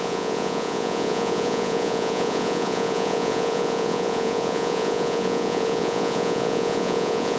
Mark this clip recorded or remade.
remade